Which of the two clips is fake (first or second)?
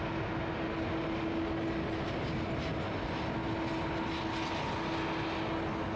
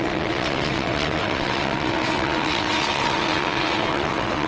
second